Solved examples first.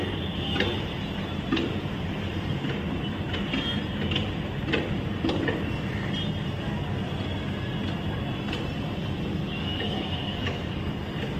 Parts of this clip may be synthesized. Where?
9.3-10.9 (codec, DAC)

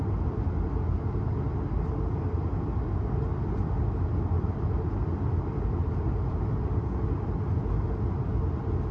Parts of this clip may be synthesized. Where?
none

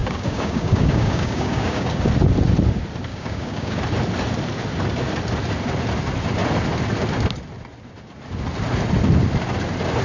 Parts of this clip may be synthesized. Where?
0.0-2.1 (codec, DAC); 3.1-3.8

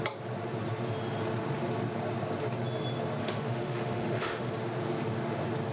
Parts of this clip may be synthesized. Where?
3.2-4.5 (autoencoder, DAC-VAE)